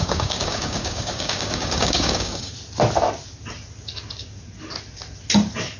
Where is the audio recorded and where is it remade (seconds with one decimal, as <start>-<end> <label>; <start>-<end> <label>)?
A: 0.0-2.5 remade; 2.5-5.8 recorded